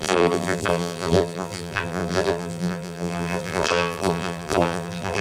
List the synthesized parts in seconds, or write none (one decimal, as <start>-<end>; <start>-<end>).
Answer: 0.0-5.2